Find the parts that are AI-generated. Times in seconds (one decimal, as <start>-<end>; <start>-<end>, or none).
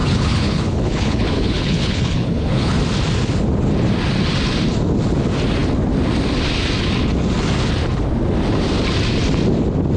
0.0-2.8